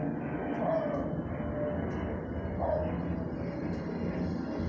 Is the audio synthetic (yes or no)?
no